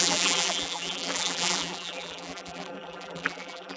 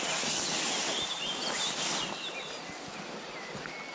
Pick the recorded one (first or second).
second